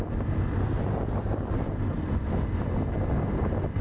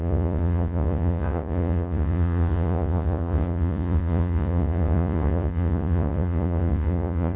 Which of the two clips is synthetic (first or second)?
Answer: second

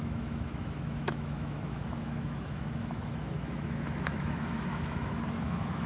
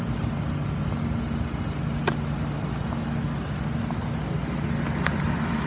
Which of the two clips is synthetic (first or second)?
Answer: first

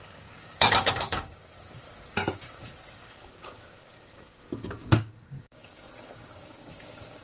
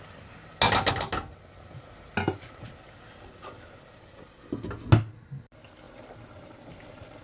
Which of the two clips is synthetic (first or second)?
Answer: first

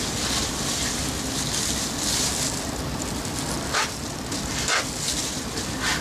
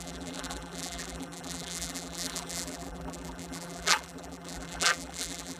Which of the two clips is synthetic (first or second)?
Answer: second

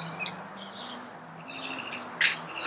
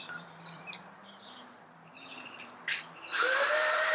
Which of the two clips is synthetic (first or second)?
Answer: second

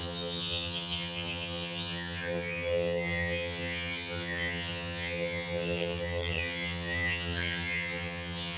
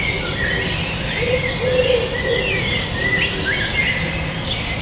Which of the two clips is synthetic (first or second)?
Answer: first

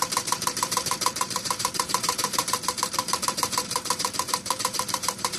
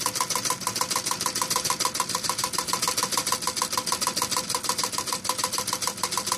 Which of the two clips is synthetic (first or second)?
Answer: first